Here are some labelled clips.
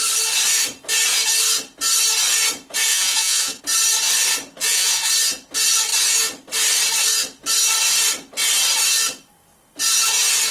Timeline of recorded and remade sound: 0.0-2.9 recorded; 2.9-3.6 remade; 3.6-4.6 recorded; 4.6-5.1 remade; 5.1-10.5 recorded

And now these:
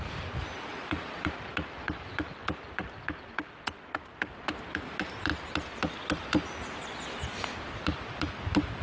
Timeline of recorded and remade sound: 0.0-8.8 recorded

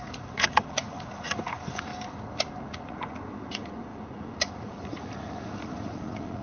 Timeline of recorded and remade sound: 0.0-1.9 remade; 1.9-2.6 recorded; 2.6-6.4 remade

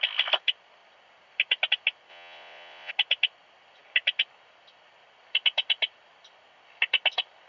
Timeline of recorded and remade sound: 0.0-2.1 recorded; 2.1-2.9 remade; 2.9-7.5 recorded

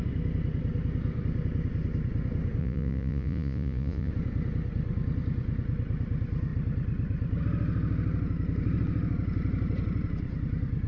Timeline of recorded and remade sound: 0.0-2.6 recorded; 2.6-4.1 remade; 4.1-10.9 recorded

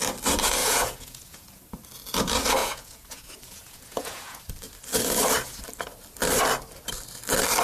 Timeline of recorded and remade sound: 0.0-0.6 recorded; 0.6-1.6 remade; 1.6-2.6 recorded; 2.6-4.4 remade; 4.4-7.6 recorded

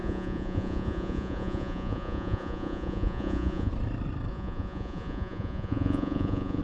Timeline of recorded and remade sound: 0.0-3.7 remade; 3.7-4.3 recorded; 4.3-6.6 remade